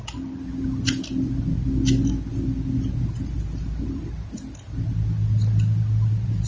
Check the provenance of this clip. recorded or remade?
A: recorded